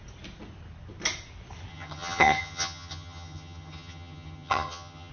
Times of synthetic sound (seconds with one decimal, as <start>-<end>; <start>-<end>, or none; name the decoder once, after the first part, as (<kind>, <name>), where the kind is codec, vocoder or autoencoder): 1.7-5.1 (vocoder, HiFi-GAN)